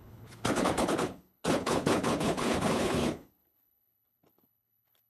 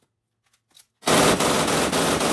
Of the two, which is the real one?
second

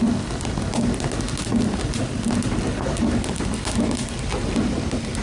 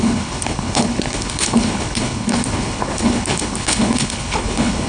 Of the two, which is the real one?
first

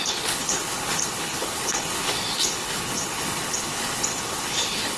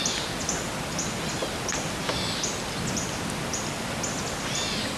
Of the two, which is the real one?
second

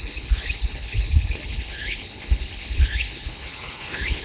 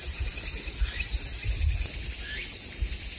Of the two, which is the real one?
second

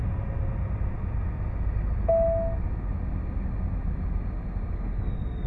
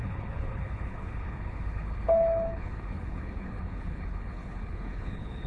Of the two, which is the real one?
first